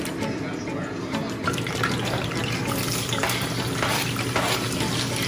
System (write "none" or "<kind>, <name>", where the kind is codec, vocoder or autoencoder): none